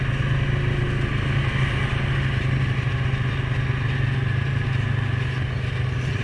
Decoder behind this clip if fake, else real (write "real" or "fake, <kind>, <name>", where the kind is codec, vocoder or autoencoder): real